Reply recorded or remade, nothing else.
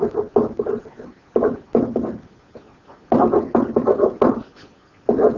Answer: recorded